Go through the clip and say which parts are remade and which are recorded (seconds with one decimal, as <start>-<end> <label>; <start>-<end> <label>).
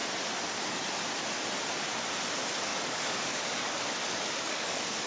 0.0-2.7 recorded; 2.7-5.1 remade